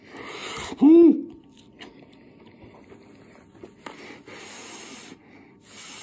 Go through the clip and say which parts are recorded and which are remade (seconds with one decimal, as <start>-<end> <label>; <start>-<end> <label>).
0.0-6.0 recorded